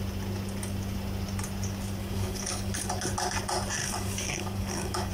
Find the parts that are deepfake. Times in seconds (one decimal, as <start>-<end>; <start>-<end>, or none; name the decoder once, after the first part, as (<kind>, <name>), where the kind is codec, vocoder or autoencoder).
2.0-2.9 (codec, DAC); 3.8-5.1